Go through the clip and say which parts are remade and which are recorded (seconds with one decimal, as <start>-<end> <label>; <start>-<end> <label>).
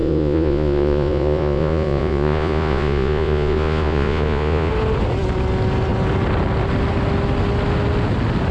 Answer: 0.0-4.7 remade; 4.7-8.5 recorded